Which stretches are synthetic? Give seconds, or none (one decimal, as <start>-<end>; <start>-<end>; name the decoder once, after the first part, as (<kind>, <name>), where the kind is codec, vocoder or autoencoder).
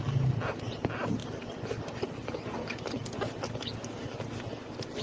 none